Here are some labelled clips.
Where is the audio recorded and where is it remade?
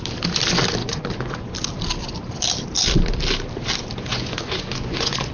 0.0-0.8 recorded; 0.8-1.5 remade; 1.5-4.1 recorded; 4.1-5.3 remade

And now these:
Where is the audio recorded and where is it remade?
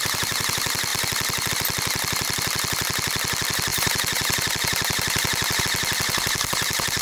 0.0-3.7 recorded; 3.7-5.6 remade; 5.6-7.0 recorded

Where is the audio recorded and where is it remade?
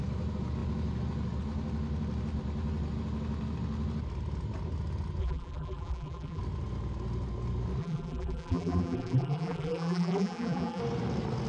0.0-5.2 recorded; 5.2-6.4 remade; 6.4-7.8 recorded; 7.8-10.8 remade; 10.8-11.5 recorded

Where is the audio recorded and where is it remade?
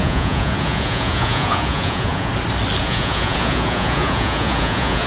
0.0-2.3 remade; 2.3-2.8 recorded; 2.8-5.1 remade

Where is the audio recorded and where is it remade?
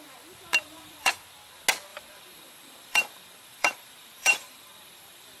0.0-0.5 recorded; 0.5-1.1 remade; 1.1-1.9 recorded; 1.9-5.4 remade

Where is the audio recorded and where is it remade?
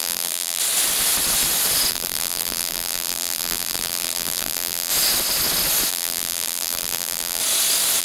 0.0-0.6 remade; 0.6-1.9 recorded; 1.9-4.9 remade; 4.9-5.9 recorded; 5.9-7.4 remade; 7.4-8.0 recorded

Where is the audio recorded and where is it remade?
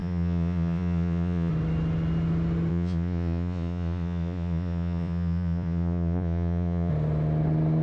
0.0-1.5 remade; 1.5-2.7 recorded; 2.7-6.9 remade; 6.9-7.8 recorded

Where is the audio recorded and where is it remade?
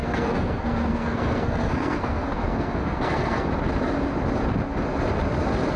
0.0-3.5 remade; 3.5-5.8 recorded